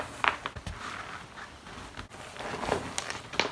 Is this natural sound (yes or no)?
yes